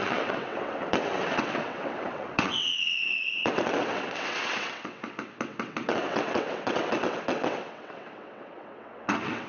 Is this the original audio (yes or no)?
no